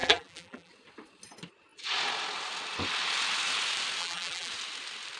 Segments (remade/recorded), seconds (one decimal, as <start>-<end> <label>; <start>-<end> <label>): 0.0-0.7 remade; 0.7-4.0 recorded; 4.0-4.5 remade; 4.5-5.2 recorded